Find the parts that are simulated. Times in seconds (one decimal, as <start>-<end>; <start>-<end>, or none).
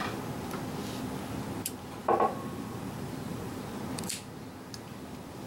2.0-3.6